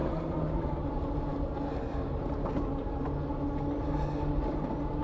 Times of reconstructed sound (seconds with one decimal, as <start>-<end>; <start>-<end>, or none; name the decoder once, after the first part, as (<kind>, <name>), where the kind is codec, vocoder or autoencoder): none